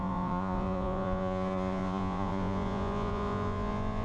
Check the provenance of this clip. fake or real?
fake